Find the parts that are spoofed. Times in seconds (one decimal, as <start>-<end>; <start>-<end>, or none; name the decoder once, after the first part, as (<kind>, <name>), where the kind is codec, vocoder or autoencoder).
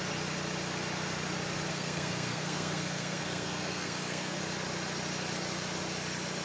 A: 1.7-4.4 (codec, SNAC)